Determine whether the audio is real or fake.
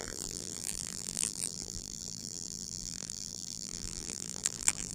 fake